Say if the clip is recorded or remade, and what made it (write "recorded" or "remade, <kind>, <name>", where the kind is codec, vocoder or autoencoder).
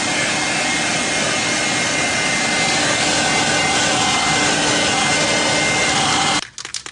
recorded